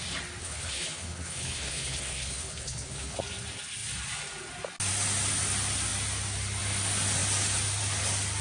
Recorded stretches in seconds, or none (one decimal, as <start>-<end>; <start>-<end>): 0.0-0.4; 3.2-8.4